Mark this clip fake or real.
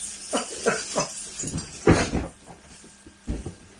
real